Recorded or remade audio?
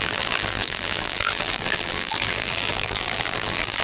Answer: remade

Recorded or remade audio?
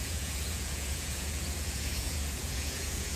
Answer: remade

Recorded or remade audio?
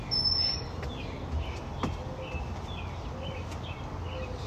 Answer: recorded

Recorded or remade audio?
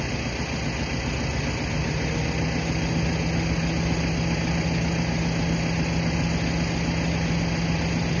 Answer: recorded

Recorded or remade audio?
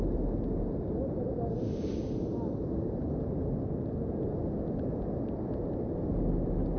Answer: recorded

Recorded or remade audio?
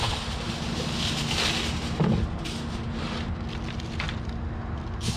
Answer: recorded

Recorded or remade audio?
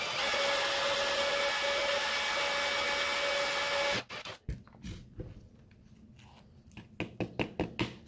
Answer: recorded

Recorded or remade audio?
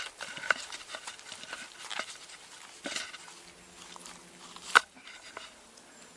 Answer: recorded